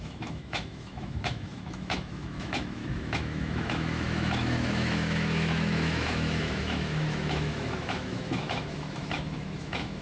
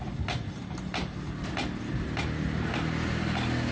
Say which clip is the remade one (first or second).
first